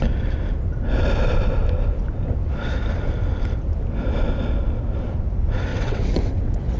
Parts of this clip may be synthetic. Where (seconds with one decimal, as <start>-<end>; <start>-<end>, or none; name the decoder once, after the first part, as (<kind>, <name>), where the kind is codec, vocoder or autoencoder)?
5.7-6.8 (vocoder, WaveNeXt)